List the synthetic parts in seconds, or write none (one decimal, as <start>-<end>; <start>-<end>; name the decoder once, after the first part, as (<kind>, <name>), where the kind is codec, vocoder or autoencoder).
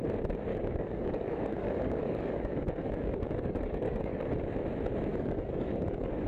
0.5-4.3 (codec, DAC); 5.1-6.3